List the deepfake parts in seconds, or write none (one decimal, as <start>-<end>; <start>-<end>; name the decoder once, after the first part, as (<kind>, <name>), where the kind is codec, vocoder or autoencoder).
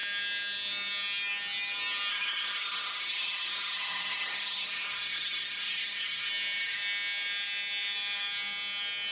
2.1-6.3 (codec, SNAC)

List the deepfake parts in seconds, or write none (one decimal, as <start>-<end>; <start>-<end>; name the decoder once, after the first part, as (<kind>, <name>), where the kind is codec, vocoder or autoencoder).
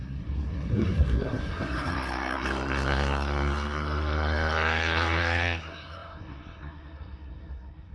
0.0-7.9 (codec, SNAC)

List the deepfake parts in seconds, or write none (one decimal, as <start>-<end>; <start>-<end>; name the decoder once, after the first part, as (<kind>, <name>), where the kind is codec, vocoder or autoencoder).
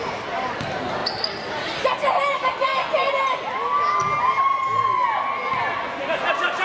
none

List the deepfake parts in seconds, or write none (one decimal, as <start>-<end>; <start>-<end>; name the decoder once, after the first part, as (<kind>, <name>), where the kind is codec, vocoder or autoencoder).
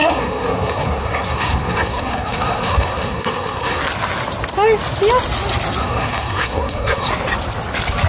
0.0-3.8 (codec, SNAC); 5.8-7.1